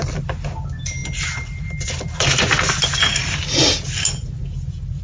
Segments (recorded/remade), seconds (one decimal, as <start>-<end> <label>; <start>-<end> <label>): 0.0-5.0 recorded